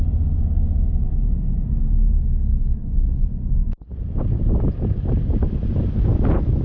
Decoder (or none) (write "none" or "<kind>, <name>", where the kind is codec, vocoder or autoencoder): none